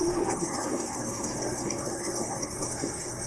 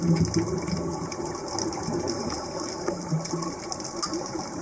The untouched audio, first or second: second